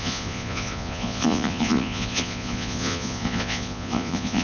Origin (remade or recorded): remade